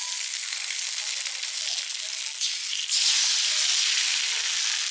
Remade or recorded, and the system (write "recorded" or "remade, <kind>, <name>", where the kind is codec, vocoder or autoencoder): recorded